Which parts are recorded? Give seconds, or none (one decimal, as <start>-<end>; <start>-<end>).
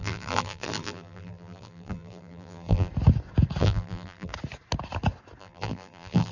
2.9-3.6; 4.3-5.4